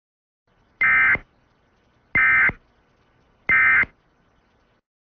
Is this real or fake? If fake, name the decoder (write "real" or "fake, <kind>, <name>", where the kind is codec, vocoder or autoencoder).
real